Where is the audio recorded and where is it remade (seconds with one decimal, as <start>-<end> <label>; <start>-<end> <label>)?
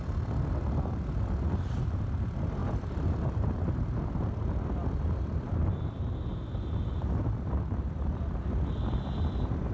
0.0-9.7 recorded